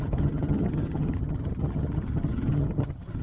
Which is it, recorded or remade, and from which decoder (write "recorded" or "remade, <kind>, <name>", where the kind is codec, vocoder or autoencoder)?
remade, vocoder, HiFi-GAN